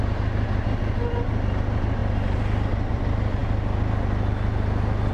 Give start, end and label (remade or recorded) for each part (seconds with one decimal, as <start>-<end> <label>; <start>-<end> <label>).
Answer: 0.0-5.1 recorded